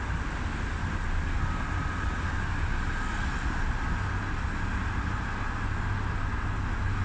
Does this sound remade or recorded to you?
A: recorded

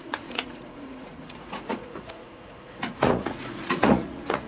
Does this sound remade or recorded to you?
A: remade